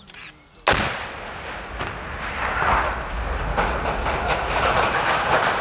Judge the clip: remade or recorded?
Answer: recorded